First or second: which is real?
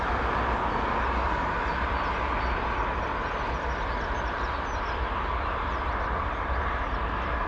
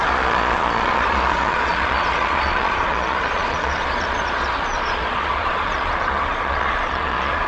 first